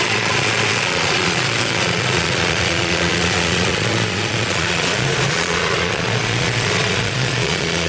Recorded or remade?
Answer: remade